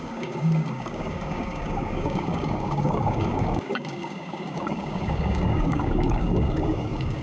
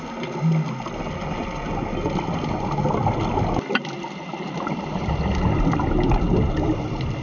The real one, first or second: second